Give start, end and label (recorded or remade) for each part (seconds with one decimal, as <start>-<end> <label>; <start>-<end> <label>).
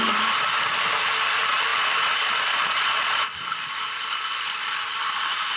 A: 0.0-5.6 recorded